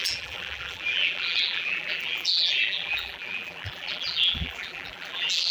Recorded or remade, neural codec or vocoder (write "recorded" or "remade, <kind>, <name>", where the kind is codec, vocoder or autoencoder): remade, vocoder, BigVGAN v2